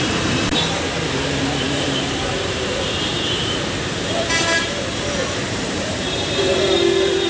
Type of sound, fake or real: fake